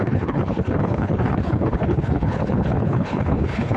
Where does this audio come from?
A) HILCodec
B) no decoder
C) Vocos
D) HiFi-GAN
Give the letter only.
A